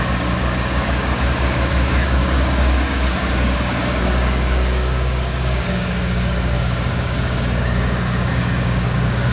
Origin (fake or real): fake